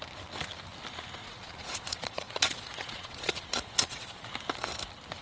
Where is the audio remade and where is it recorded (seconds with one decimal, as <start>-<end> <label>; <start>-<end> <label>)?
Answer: 0.0-1.2 recorded; 1.2-4.3 remade; 4.3-5.2 recorded